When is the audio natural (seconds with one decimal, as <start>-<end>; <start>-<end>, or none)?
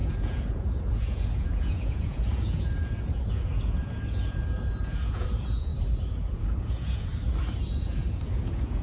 5.7-6.3; 7.1-7.6